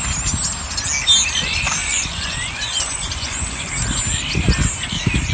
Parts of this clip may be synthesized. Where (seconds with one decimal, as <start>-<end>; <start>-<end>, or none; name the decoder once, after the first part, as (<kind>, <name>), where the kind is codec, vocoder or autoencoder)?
1.8-3.7 (vocoder, Vocos)